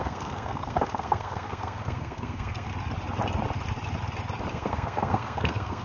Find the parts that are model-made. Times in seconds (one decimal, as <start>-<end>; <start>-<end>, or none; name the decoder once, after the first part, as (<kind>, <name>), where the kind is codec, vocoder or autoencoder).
0.0-2.7 (codec, SNAC); 4.5-5.8